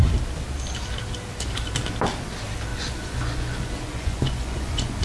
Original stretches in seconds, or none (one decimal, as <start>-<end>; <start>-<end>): 0.0-2.7

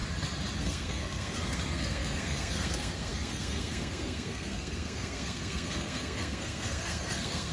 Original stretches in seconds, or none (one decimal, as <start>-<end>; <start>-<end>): 0.0-0.6

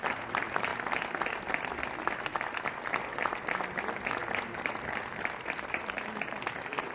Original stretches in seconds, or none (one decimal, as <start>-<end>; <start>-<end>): 0.7-4.2

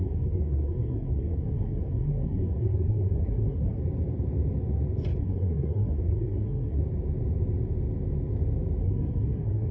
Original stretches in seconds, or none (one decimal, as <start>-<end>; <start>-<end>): 3.8-5.2; 6.8-8.8

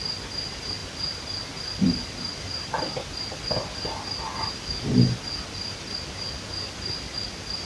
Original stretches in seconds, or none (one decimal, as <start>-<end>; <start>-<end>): 0.0-7.7